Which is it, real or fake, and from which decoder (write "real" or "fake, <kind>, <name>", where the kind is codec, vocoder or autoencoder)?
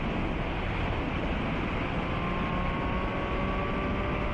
real